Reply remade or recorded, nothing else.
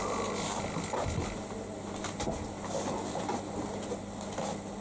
recorded